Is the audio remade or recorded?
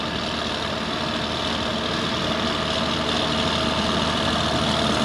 recorded